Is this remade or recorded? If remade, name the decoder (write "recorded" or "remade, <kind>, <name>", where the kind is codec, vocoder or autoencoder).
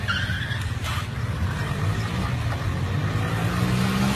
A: recorded